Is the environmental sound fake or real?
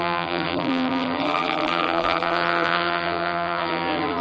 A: fake